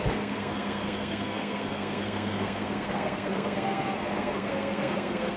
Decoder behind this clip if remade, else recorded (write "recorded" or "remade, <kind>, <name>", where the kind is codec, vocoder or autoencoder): remade, codec, SNAC